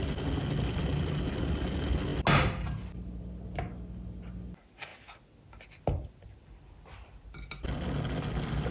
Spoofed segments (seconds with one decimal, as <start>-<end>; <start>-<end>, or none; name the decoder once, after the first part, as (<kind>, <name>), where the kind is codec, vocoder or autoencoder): none